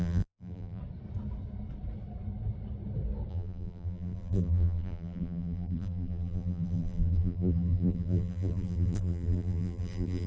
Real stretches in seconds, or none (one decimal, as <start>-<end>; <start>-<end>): 0.8-3.3